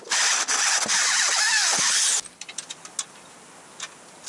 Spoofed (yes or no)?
no